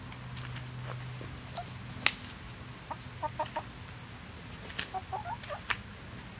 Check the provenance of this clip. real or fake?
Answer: real